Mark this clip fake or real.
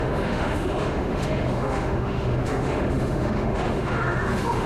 fake